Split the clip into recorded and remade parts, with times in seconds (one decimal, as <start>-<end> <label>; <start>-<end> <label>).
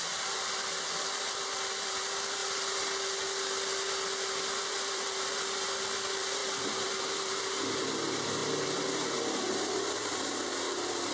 0.0-2.4 remade; 2.4-4.6 recorded; 4.6-11.1 remade